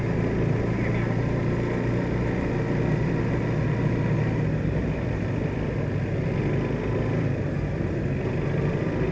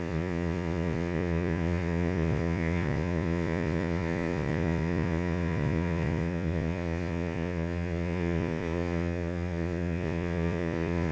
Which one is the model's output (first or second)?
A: second